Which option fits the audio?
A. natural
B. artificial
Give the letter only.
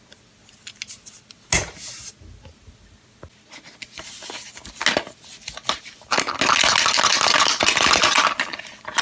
A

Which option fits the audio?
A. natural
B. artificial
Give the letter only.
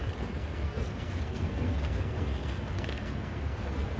B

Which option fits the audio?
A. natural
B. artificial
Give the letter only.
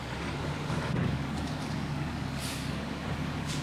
B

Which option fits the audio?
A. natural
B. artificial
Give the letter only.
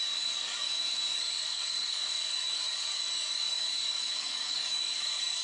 B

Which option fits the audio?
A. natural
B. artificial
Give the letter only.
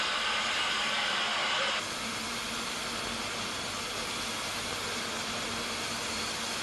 A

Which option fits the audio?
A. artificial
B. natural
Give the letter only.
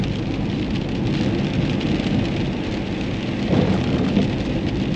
B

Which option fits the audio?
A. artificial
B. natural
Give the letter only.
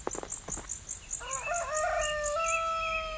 B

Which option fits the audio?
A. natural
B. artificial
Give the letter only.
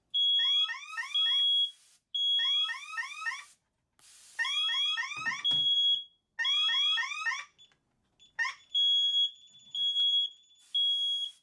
A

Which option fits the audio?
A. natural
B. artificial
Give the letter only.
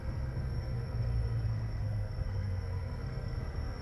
B